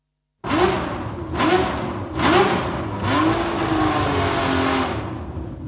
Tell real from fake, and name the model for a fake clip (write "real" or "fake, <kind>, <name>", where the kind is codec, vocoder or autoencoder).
real